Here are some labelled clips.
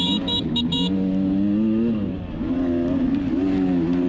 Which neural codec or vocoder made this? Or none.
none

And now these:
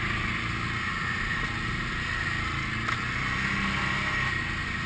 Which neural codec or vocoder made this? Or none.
none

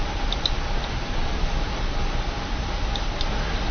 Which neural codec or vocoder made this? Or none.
none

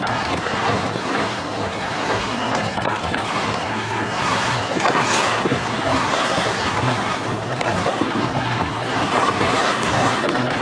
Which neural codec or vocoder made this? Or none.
codec, SNAC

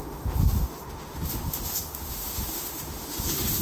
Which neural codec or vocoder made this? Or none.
autoencoder, DAC-VAE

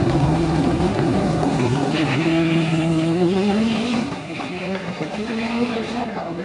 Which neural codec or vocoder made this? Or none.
codec, SNAC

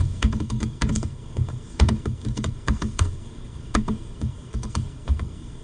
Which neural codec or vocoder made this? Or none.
codec, SNAC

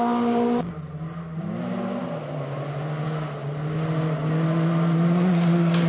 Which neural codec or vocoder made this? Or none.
none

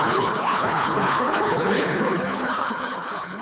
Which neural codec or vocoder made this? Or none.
codec, HILCodec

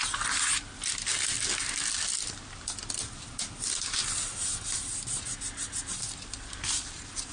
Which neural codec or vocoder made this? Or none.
none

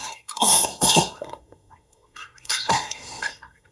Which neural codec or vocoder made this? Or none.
codec, SNAC